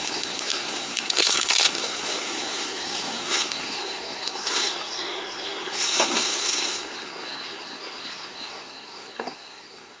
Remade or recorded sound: remade